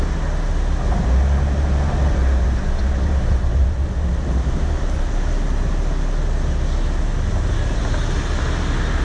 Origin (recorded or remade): recorded